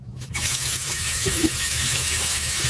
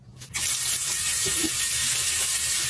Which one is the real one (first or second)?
second